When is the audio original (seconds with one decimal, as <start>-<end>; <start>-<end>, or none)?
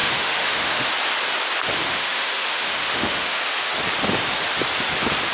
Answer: 0.9-1.9; 3.4-5.3